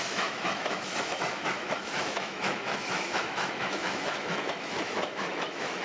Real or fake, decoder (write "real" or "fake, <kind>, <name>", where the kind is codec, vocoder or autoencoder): fake, autoencoder, DAC-VAE